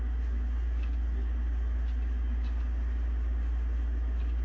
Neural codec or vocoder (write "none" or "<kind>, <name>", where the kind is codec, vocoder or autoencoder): none